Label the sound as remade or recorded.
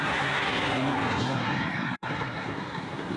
remade